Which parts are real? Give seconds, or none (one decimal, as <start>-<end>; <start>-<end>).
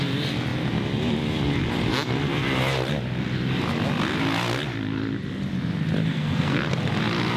0.0-6.1; 6.7-7.4